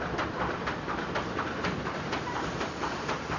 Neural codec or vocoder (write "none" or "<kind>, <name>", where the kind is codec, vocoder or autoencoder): none